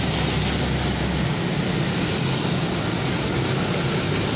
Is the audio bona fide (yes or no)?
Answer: yes